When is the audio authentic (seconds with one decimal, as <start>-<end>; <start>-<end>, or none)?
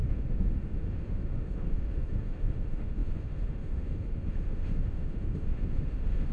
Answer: none